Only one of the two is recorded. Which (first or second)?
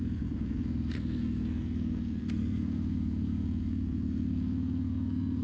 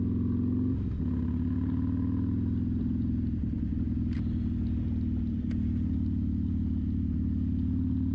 second